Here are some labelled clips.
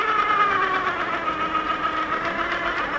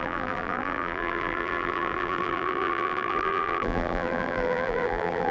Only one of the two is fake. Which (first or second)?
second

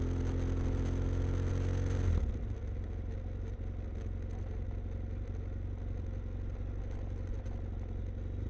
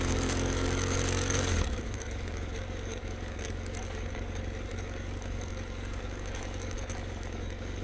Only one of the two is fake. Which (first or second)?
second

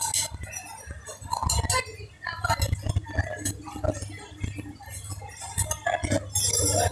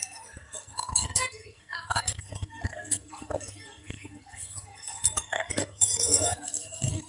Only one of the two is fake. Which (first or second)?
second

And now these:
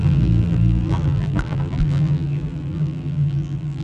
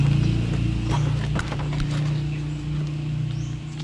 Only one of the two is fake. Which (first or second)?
first